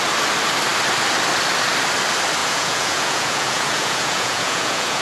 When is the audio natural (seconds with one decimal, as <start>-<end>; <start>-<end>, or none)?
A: 0.0-2.4